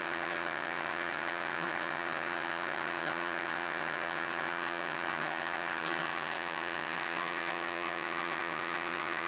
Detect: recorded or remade remade